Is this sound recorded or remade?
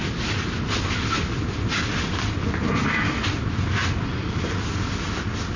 recorded